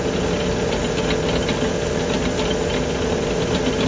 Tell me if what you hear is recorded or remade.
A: recorded